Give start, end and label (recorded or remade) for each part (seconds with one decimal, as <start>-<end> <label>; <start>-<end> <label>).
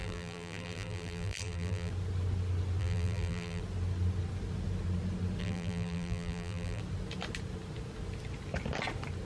0.0-1.9 remade; 1.9-2.8 recorded; 2.8-3.6 remade; 3.6-5.4 recorded; 5.4-6.8 remade; 6.8-9.3 recorded